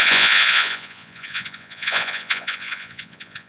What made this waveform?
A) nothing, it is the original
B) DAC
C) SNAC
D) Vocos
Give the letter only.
D